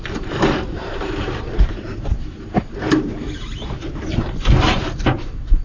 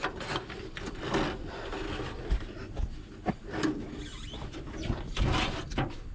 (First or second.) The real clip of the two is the second